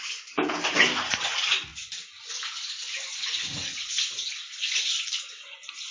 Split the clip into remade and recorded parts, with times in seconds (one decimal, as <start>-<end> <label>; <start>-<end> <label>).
0.0-5.9 recorded